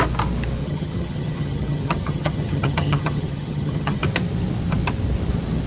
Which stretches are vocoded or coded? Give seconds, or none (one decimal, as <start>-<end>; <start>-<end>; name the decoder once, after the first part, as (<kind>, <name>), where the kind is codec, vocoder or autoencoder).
0.6-4.0 (vocoder, HiFi-GAN)